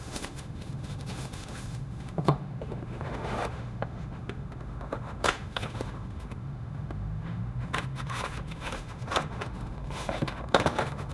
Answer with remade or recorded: remade